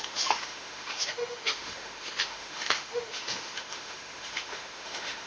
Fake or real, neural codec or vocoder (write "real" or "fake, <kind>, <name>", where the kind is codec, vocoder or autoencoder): fake, autoencoder, DAC-VAE